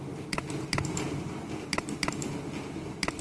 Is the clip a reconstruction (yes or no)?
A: no